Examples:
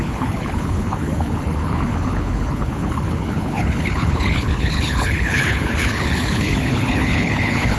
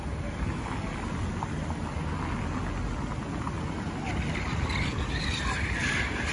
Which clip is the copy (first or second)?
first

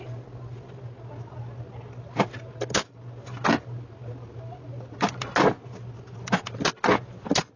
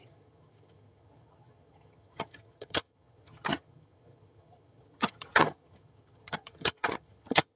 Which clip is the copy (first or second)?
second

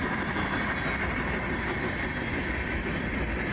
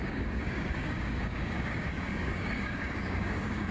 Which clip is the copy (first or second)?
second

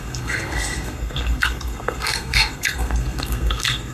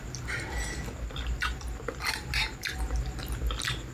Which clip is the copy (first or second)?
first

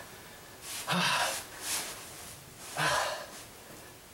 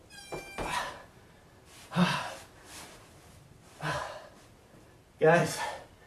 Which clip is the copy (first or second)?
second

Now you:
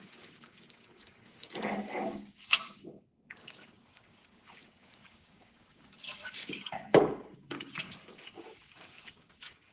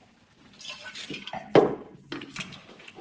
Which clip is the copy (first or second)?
first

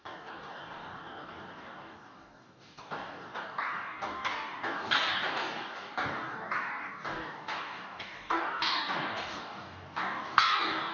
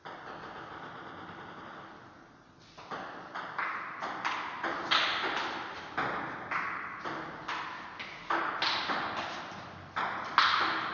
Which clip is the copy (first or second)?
first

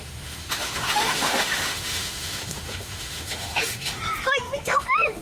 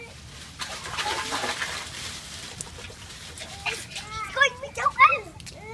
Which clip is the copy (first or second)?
first